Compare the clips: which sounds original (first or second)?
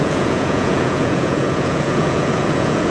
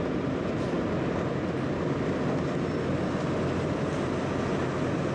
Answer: second